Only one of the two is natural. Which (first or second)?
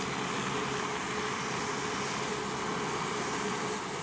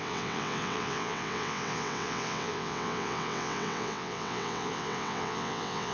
first